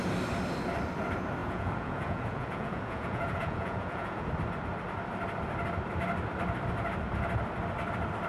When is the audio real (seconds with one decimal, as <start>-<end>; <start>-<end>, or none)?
0.0-1.4; 4.3-8.3